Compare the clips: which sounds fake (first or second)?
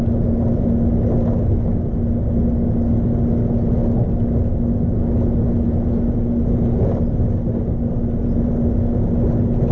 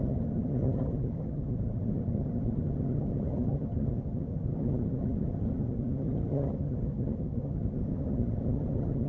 second